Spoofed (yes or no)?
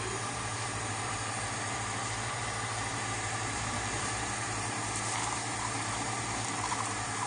yes